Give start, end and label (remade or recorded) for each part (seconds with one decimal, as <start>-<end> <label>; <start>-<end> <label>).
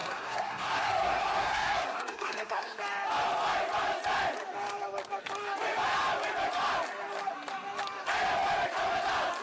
0.0-2.8 remade; 2.8-9.4 recorded